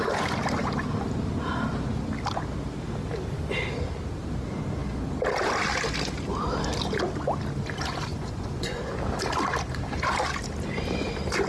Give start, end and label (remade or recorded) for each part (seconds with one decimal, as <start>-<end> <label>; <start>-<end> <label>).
0.0-8.1 recorded; 8.1-8.8 remade; 8.8-11.5 recorded